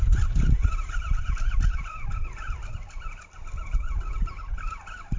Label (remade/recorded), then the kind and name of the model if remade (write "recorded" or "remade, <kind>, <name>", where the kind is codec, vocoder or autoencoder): recorded